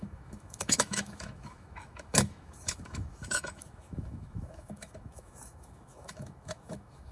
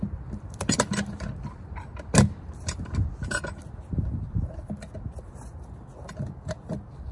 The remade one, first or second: first